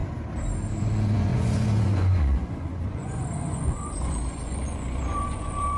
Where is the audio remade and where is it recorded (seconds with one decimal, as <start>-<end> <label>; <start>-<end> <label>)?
0.0-0.8 recorded; 0.8-5.8 remade